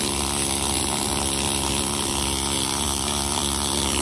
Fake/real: fake